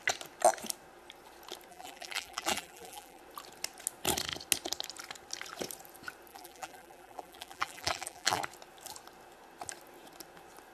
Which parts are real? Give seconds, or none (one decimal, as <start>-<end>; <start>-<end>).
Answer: 0.0-1.7; 3.2-6.3; 8.4-10.7